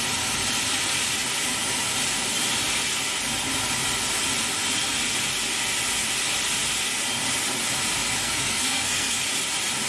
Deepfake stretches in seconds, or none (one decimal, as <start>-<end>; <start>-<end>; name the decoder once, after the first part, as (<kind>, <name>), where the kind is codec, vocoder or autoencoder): 8.2-9.2 (codec, SNAC)